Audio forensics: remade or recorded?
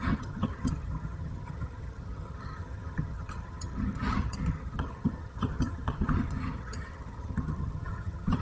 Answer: remade